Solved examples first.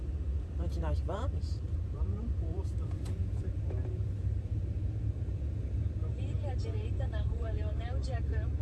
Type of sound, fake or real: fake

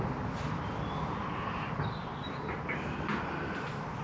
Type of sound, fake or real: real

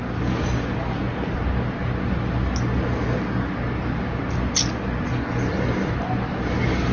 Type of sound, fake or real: real